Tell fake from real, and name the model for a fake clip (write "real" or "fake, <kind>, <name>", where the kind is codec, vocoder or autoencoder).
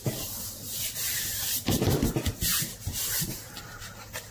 real